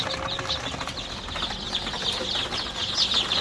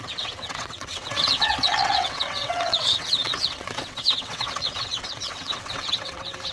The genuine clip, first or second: first